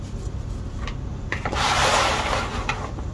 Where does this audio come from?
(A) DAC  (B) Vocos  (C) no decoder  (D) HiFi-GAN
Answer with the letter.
C